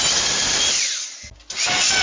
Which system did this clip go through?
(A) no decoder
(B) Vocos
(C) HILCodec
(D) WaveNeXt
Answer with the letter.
A